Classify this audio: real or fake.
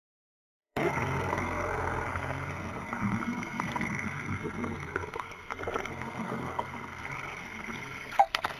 fake